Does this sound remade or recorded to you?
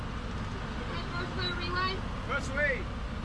recorded